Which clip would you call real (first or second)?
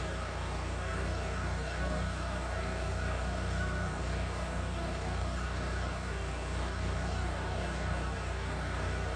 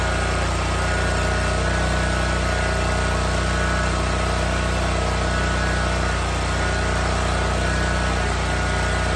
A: second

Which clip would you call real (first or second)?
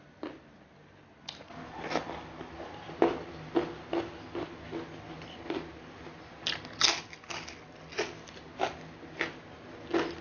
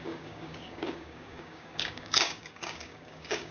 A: first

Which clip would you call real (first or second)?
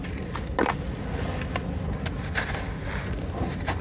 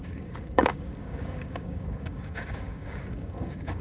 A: first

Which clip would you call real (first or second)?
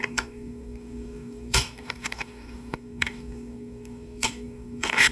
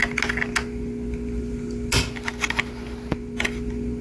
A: second